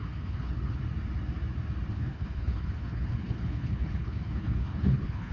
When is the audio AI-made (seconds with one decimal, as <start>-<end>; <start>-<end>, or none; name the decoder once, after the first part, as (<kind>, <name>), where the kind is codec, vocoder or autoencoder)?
0.0-0.8 (codec, HILCodec); 1.9-5.3